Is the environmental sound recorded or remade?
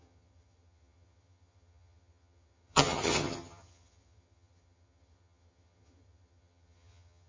remade